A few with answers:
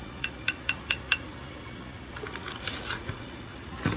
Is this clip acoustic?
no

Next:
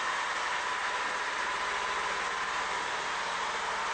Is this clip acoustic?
yes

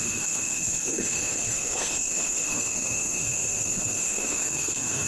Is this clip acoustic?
no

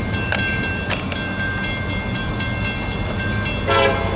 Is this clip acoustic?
yes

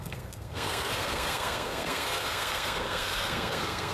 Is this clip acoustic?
no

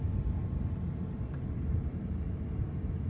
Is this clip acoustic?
yes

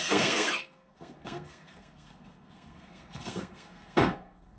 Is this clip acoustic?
no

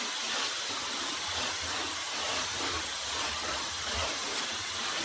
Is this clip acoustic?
yes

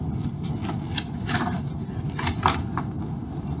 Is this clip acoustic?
yes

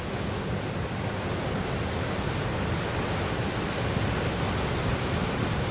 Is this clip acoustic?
yes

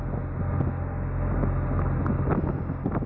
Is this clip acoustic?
yes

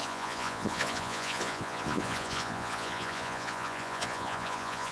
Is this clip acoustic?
no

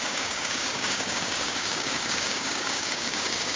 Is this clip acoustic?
no